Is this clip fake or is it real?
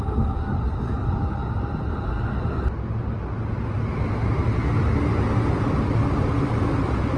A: real